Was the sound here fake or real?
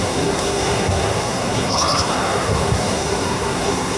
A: fake